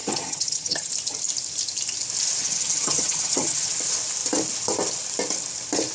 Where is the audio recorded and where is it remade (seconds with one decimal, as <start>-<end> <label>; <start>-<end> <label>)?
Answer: 0.0-0.9 remade; 0.9-2.4 recorded; 2.4-3.7 remade; 3.7-5.9 recorded